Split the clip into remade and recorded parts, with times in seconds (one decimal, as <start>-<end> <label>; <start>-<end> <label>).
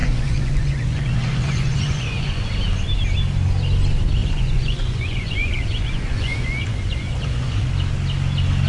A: 0.0-2.4 remade; 2.4-4.2 recorded; 4.2-7.7 remade; 7.7-8.7 recorded